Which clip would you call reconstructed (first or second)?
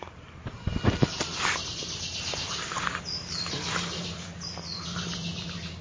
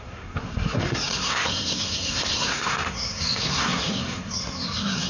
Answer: second